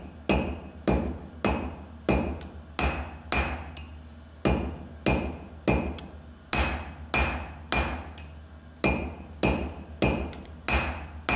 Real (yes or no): yes